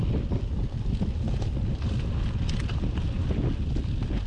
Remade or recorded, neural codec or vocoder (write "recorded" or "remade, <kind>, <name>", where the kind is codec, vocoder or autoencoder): recorded